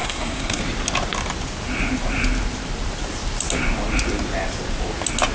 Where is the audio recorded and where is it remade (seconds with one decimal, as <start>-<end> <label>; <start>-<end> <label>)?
0.0-0.6 remade; 0.6-5.3 recorded